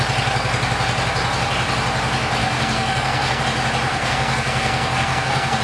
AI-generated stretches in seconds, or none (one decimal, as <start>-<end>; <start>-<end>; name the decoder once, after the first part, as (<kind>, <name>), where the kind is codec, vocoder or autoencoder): 2.4-3.4 (codec, SNAC); 3.9-5.6